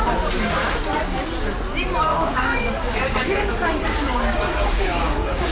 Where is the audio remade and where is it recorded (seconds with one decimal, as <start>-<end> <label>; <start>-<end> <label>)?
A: 0.0-2.1 recorded; 2.1-5.5 remade

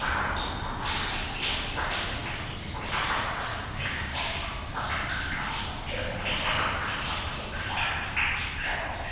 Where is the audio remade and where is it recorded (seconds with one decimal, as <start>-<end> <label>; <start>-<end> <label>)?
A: 0.0-3.5 recorded; 3.5-4.4 remade; 4.4-9.1 recorded

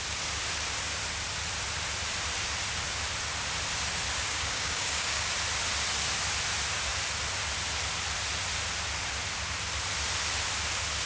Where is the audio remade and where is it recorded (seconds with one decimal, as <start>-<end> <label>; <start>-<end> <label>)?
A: 0.0-4.2 recorded; 4.2-5.3 remade; 5.3-11.1 recorded

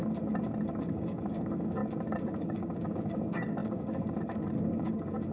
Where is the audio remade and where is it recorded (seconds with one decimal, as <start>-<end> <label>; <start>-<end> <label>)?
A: 0.0-0.8 recorded; 0.8-1.8 remade; 1.8-2.4 recorded; 2.4-5.3 remade

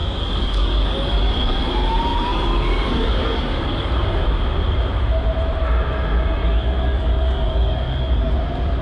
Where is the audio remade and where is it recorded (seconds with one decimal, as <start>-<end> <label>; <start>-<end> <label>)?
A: 0.0-1.7 remade; 1.7-2.1 recorded; 2.1-3.9 remade; 3.9-6.4 recorded; 6.4-8.3 remade; 8.3-8.8 recorded

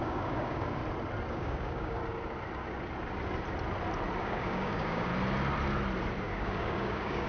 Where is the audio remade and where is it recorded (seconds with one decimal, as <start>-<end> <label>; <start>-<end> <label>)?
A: 0.0-0.8 remade; 0.8-1.3 recorded; 1.3-2.0 remade; 2.0-4.2 recorded; 4.2-5.1 remade; 5.1-6.2 recorded; 6.2-7.3 remade

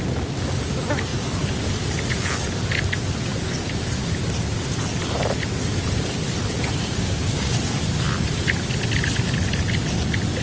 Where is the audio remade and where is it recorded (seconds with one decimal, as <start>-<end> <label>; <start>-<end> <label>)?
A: 0.0-6.8 recorded; 6.8-7.5 remade; 7.5-10.4 recorded

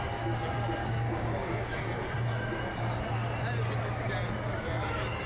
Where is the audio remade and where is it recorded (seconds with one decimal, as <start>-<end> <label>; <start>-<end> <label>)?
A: 0.0-0.8 recorded; 0.8-1.8 remade; 1.8-5.3 recorded